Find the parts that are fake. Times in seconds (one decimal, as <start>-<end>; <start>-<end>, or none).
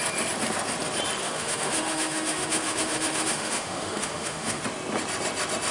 1.2-4.6